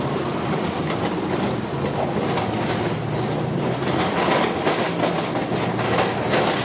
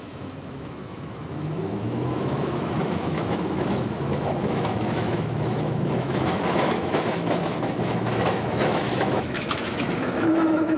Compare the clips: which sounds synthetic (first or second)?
second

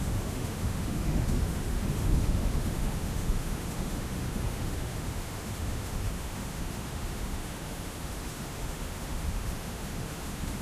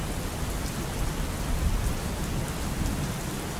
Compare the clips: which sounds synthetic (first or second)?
first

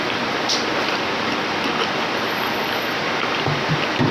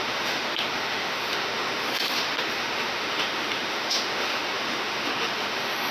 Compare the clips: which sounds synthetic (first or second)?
second